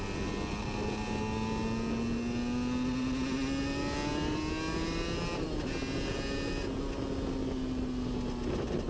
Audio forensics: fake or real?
real